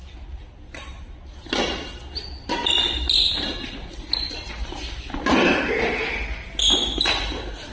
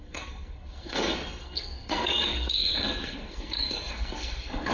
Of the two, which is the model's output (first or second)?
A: second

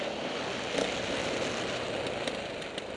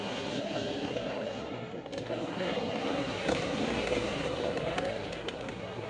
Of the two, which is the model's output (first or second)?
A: second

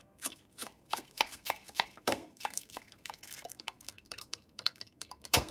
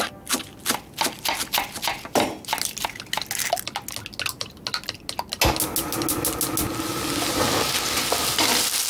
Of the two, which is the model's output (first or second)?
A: first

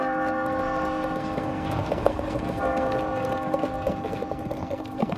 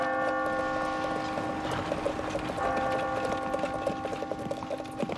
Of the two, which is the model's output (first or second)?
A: first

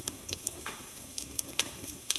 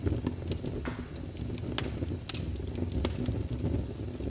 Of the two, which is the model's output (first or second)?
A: first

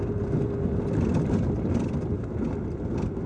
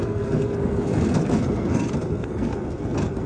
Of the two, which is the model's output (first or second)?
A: second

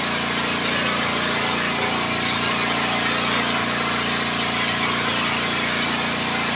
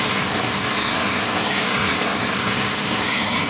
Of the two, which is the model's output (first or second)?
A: second